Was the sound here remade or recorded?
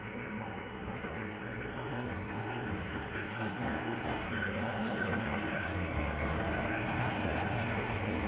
remade